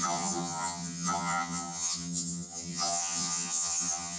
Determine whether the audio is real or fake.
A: fake